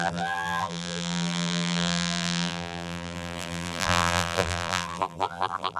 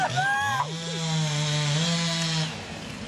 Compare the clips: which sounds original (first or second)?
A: second